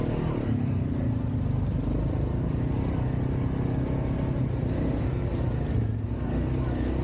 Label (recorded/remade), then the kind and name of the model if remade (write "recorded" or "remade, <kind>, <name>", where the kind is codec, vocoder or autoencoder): recorded